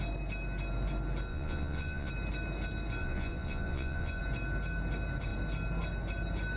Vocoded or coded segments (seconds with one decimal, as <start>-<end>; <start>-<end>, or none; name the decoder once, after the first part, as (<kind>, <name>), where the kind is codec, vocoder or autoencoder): 1.3-2.1 (vocoder, Vocos); 3.0-4.2